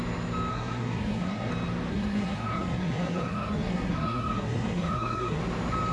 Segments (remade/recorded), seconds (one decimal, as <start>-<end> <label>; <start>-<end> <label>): 0.0-0.5 recorded; 0.5-1.5 remade; 1.5-1.9 recorded; 1.9-5.4 remade; 5.4-5.9 recorded